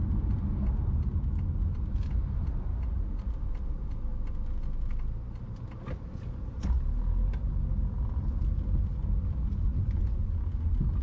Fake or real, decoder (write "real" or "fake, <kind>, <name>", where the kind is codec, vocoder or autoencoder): real